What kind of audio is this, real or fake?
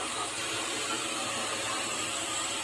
fake